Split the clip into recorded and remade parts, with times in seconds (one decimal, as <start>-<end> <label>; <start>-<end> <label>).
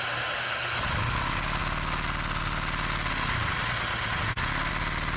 0.0-5.2 recorded